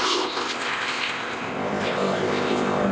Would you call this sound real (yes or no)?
no